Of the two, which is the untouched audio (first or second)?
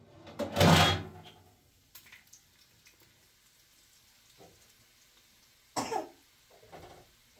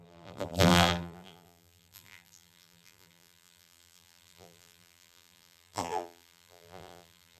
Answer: first